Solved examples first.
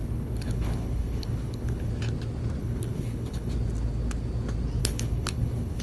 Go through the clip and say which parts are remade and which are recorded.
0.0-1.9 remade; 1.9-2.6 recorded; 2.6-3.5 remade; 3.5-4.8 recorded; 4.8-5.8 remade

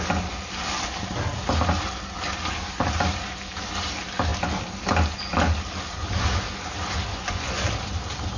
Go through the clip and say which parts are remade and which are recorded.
0.0-7.1 recorded; 7.1-7.6 remade; 7.6-8.4 recorded

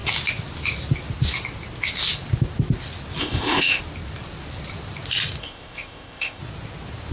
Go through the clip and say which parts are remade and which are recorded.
0.0-3.2 recorded; 3.2-3.8 remade; 3.8-5.4 recorded; 5.4-6.4 remade; 6.4-7.1 recorded

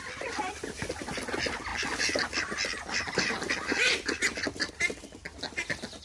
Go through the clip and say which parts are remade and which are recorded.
0.0-6.0 recorded

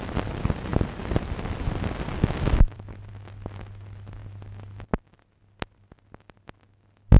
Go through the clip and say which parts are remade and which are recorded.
0.0-0.7 recorded; 0.7-3.1 remade; 3.1-4.2 recorded; 4.2-5.2 remade; 5.2-7.2 recorded

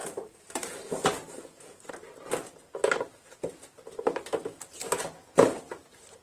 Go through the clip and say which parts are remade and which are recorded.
0.0-1.9 remade; 1.9-6.2 recorded